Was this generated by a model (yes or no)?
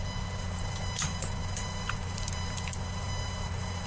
yes